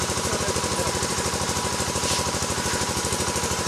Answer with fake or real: fake